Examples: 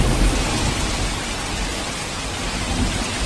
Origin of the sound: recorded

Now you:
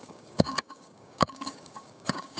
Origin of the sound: remade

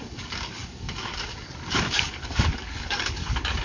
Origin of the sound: remade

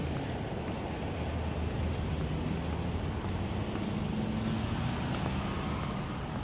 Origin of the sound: recorded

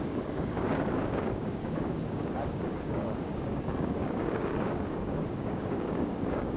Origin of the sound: remade